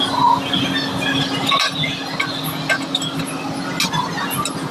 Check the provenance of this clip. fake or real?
real